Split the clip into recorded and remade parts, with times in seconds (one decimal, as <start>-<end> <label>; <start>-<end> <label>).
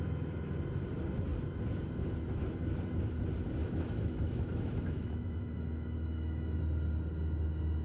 0.0-3.6 recorded; 3.6-6.6 remade; 6.6-7.8 recorded